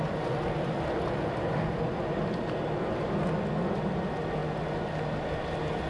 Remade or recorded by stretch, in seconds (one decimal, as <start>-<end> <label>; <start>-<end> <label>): 0.0-5.9 recorded